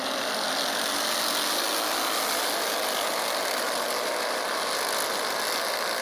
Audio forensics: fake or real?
real